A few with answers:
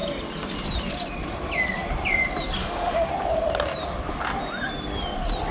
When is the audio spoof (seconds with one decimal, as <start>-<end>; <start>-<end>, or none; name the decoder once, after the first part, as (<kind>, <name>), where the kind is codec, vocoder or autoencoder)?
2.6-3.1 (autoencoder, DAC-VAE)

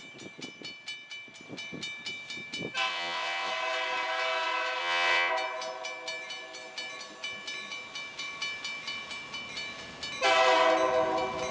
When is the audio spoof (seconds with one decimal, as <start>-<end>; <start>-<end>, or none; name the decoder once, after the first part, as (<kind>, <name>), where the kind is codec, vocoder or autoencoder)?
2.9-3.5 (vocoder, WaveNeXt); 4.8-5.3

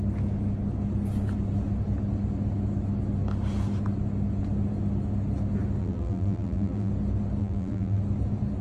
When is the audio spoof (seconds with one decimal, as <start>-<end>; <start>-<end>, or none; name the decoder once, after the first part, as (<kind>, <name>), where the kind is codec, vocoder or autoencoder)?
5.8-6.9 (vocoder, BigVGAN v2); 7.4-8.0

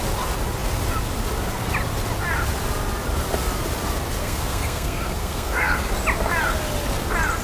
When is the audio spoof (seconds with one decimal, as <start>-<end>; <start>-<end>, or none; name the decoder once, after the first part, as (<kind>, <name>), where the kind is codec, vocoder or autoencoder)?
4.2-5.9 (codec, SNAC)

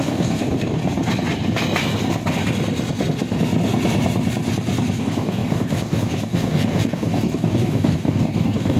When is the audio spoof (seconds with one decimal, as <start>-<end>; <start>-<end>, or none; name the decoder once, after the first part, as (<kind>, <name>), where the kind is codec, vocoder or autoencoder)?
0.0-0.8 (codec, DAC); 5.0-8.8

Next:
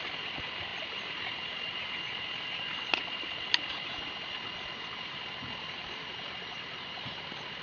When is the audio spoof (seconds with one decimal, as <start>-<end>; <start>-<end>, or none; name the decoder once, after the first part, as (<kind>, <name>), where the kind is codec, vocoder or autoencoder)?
none

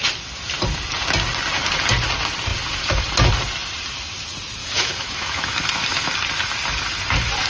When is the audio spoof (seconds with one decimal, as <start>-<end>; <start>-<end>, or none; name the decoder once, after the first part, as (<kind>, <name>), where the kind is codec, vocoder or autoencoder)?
4.6-6.1 (autoencoder, DAC-VAE)

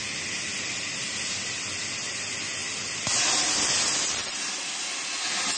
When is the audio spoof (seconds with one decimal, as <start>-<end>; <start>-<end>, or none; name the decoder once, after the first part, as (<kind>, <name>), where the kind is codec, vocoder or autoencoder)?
none